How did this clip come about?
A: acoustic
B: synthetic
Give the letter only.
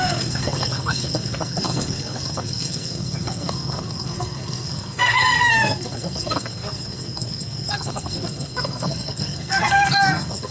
B